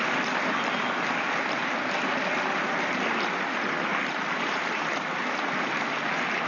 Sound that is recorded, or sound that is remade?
recorded